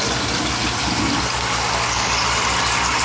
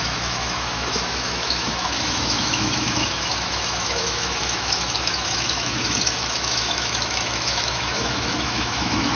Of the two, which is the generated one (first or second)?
second